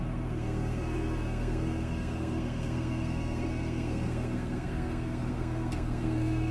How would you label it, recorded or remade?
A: remade